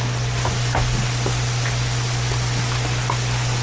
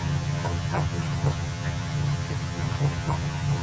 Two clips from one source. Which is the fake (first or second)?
second